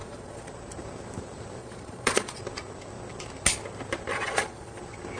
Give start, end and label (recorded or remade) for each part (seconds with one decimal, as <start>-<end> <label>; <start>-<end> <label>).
0.0-0.5 remade; 0.5-1.6 recorded; 1.6-2.4 remade; 2.4-4.1 recorded; 4.1-4.8 remade; 4.8-5.2 recorded